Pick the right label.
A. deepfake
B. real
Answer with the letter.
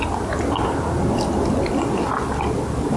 B